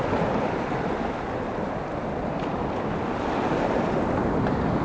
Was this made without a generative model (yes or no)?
yes